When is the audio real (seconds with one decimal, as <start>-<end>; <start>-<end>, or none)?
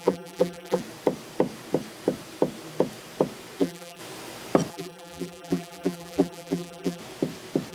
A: 0.8-3.6; 4.0-4.7; 7.0-7.7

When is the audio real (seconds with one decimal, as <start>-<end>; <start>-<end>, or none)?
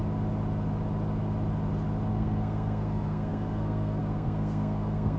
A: 0.0-2.1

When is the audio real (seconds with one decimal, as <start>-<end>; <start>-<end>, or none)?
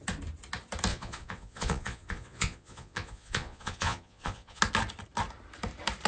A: 0.0-0.9; 4.6-6.1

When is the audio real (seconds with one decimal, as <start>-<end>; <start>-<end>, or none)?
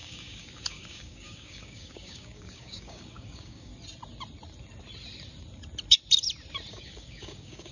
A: 3.7-6.7